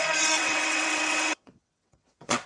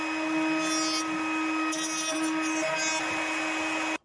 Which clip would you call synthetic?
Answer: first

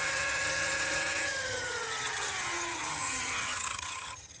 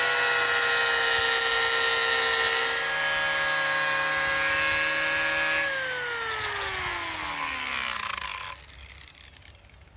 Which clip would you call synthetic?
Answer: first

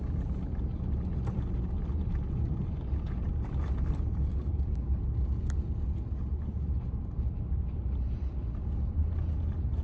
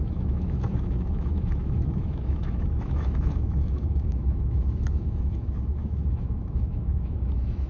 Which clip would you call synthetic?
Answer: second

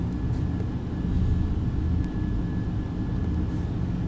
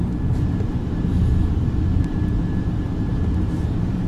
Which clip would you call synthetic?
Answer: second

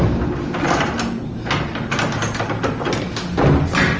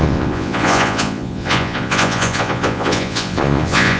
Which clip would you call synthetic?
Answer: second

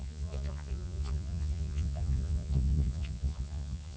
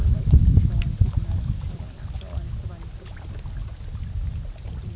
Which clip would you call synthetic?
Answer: first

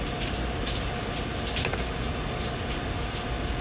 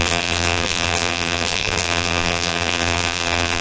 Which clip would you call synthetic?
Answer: second